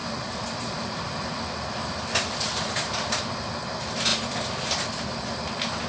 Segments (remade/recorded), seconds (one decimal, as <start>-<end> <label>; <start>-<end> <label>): 0.0-3.2 remade; 3.2-5.9 recorded